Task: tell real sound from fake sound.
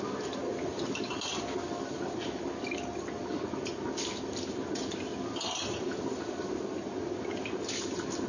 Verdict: real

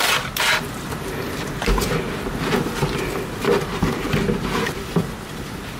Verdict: real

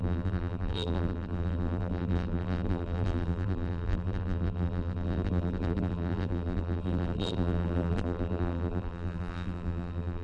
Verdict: fake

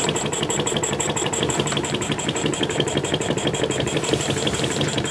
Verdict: fake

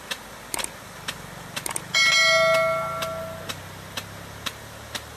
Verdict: real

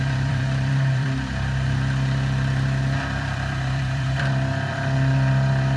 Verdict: fake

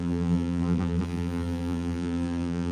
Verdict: fake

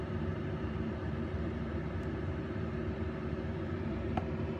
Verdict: fake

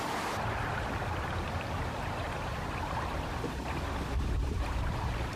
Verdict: fake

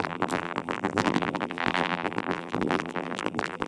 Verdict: fake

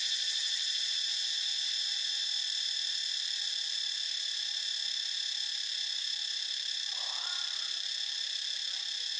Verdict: fake